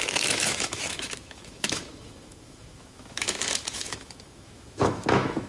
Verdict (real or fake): fake